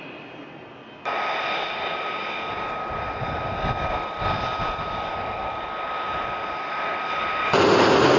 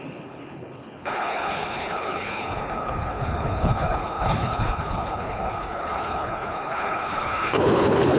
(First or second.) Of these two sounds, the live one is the first